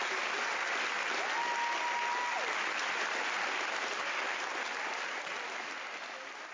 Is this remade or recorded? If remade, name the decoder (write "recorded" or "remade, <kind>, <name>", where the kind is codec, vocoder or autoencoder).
recorded